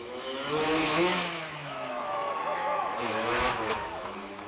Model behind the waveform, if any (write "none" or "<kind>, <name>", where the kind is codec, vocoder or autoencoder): autoencoder, DAC-VAE